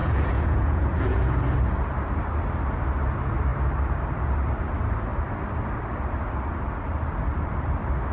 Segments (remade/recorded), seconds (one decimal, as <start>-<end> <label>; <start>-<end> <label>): 0.0-1.4 remade; 1.4-8.1 recorded